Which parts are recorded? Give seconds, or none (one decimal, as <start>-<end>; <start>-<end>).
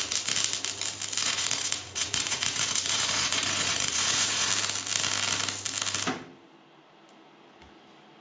0.0-1.2; 4.5-8.2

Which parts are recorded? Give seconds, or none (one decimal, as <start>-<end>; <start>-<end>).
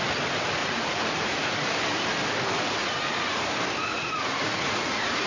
0.0-0.6; 1.5-2.8; 3.4-3.9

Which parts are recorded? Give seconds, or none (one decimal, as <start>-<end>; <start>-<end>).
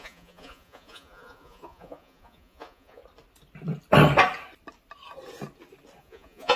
3.0-6.0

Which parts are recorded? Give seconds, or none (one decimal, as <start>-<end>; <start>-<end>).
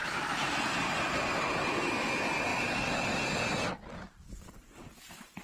0.0-5.4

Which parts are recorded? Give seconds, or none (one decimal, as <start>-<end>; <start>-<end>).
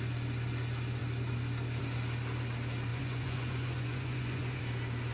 0.0-2.9; 4.6-5.1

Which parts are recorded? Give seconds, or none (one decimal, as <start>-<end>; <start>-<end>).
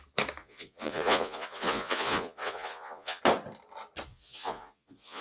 0.0-0.4; 3.2-4.1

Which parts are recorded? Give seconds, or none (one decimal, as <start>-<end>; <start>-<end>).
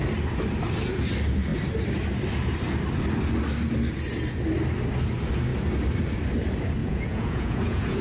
0.0-6.8